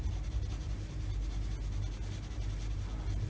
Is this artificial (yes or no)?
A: no